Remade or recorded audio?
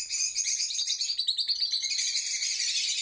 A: recorded